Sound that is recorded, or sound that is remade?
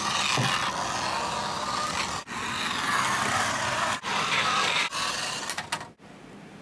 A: recorded